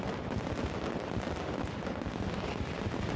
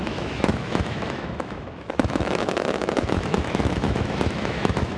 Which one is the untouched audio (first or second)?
first